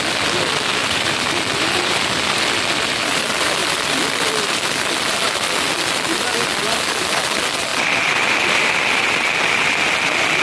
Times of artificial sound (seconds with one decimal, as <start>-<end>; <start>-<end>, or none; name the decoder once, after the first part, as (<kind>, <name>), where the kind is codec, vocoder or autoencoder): 0.8-3.2 (vocoder, BigVGAN v2); 7.7-8.7